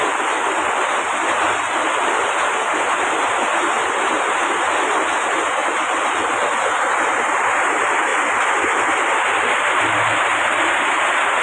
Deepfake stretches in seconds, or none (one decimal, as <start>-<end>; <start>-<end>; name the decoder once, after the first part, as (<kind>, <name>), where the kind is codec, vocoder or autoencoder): 5.6-6.1 (vocoder, BigVGAN v2)